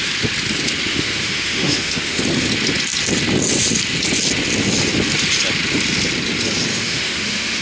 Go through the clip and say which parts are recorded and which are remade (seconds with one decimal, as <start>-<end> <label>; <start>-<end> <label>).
0.0-0.9 recorded; 0.9-2.2 remade; 2.2-6.7 recorded; 6.7-7.6 remade

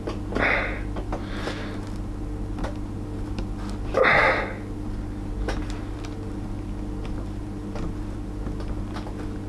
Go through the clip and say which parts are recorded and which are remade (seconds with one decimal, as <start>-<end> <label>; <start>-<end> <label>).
0.0-9.5 recorded

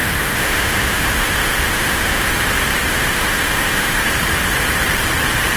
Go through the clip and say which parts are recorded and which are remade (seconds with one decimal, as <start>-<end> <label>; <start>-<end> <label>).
0.0-2.3 remade; 2.3-2.9 recorded; 2.9-4.0 remade; 4.0-5.6 recorded